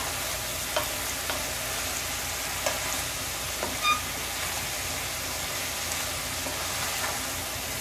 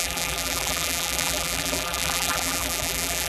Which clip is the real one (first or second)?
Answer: first